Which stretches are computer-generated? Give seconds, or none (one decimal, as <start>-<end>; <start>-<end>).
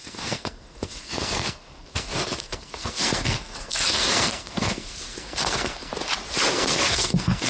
0.0-5.9; 6.5-7.5